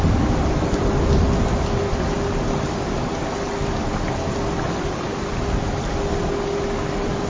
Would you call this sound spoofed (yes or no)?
no